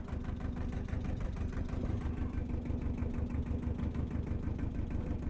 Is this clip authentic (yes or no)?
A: yes